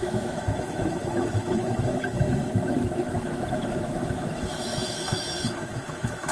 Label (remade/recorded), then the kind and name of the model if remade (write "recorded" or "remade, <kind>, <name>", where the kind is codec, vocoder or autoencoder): remade, autoencoder, DAC-VAE